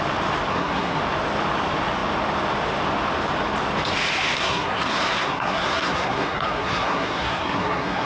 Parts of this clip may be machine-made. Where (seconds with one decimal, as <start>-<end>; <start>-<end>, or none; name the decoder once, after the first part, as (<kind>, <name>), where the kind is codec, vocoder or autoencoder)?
0.5-1.0 (codec, SNAC); 4.4-8.1